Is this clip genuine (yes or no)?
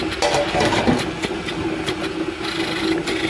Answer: yes